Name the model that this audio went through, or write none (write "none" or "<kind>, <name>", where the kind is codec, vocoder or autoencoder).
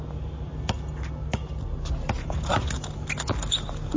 none